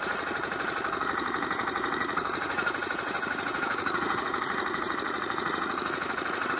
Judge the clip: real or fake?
fake